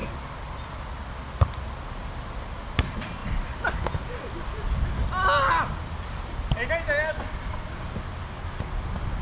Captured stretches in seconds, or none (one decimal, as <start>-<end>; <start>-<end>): 0.0-9.2